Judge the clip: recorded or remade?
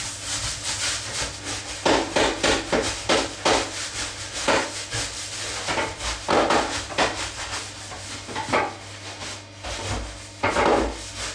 recorded